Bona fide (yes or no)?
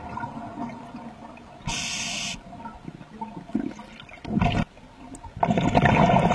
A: yes